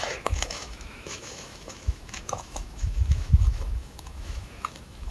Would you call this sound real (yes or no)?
no